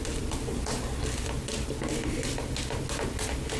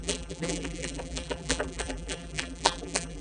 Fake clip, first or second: second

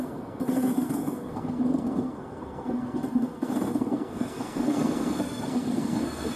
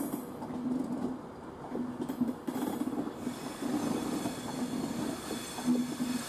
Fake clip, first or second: first